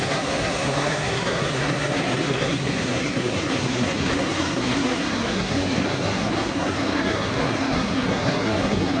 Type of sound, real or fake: fake